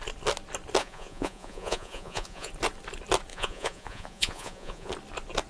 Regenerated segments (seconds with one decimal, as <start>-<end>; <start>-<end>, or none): 0.8-2.5; 3.3-4.9